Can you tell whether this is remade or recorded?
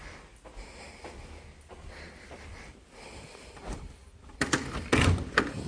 recorded